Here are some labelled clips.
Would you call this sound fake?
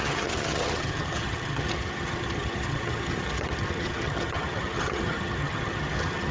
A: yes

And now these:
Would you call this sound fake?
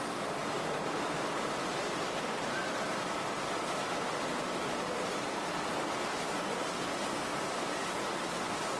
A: no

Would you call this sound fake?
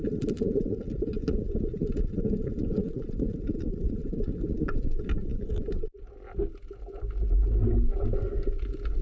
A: no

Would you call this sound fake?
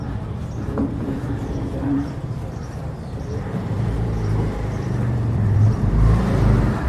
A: yes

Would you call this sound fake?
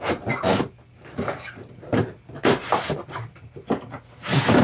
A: no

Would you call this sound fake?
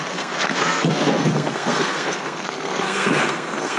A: yes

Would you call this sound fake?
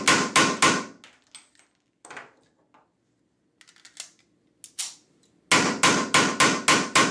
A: no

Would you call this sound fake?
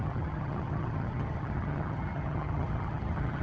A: yes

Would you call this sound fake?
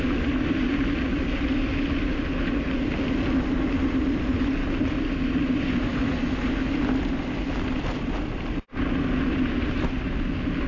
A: no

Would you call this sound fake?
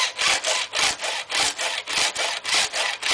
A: no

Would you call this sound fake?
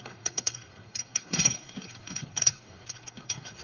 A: yes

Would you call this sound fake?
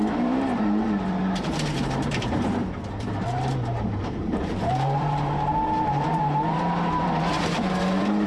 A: yes